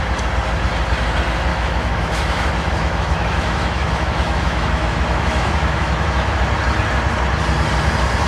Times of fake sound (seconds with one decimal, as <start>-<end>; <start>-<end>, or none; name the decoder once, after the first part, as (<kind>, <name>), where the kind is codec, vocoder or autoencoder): 1.5-6.4 (autoencoder, DAC-VAE)